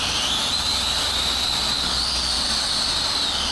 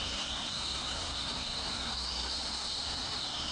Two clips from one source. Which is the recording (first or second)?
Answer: first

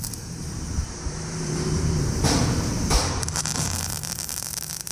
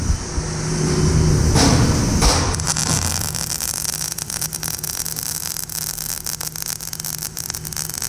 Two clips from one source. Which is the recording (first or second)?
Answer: second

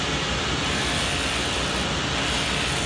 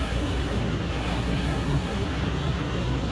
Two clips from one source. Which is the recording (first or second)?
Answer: first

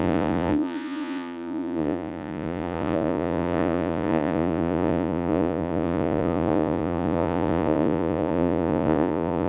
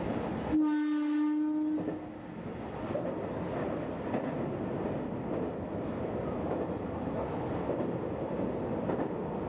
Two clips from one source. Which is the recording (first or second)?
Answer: second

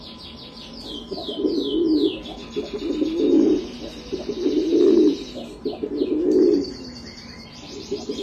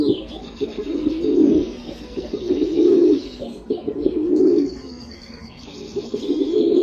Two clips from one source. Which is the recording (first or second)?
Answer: first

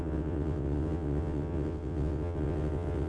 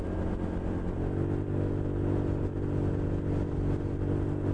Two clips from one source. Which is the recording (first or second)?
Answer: second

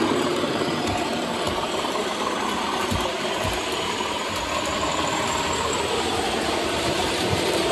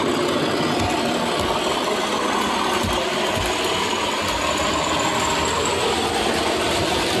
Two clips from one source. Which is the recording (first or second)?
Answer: second